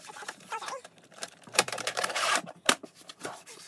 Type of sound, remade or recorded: remade